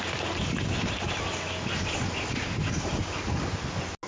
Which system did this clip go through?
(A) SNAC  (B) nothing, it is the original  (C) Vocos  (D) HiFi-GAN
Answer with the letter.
B